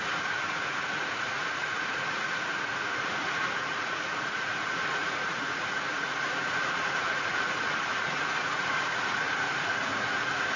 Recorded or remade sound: remade